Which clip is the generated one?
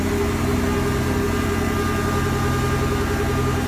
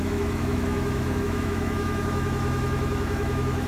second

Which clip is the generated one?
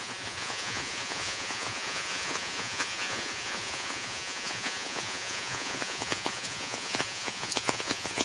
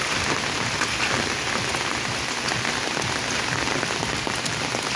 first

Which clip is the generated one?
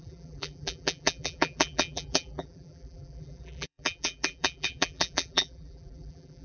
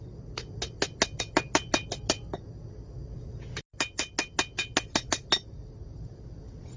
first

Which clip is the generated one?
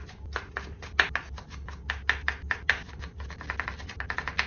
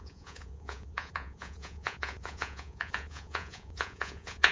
second